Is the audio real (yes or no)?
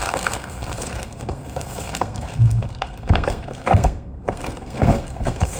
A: no